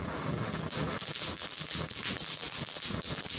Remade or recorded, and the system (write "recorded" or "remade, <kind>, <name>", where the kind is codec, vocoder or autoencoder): remade, vocoder, BigVGAN v2